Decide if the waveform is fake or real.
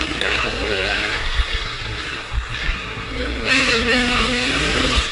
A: fake